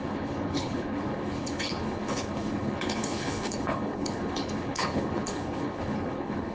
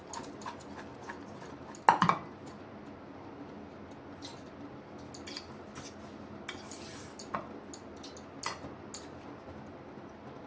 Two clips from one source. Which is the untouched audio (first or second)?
second